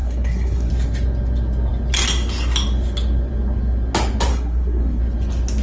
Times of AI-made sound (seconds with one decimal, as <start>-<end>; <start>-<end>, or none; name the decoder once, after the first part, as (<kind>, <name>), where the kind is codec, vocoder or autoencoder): 0.0-0.7 (codec, SNAC); 4.3-5.0